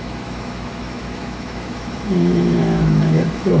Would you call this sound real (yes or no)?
no